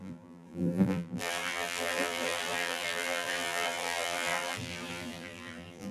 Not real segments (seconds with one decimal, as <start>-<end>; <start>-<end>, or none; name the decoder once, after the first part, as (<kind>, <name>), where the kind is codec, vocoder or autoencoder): 0.0-5.9 (vocoder, BigVGAN v2)